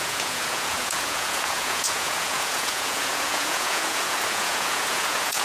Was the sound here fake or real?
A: fake